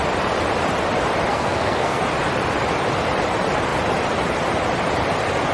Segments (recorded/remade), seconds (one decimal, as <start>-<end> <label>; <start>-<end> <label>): 0.0-1.3 recorded; 1.3-2.0 remade; 2.0-5.5 recorded